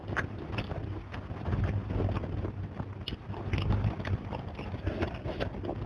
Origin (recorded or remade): recorded